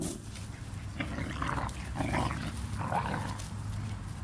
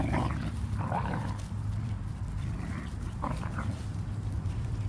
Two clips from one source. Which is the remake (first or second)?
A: second